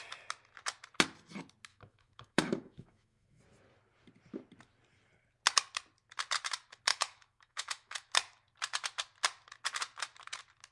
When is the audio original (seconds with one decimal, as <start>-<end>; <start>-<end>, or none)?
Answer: 0.0-1.7; 3.4-6.9; 8.1-10.7